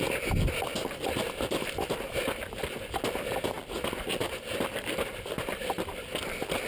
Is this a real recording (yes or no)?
yes